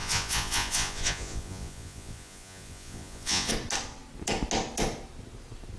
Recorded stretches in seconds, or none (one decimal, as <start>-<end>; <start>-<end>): 3.5-5.8